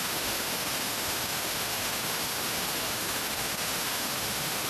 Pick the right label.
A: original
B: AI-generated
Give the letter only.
B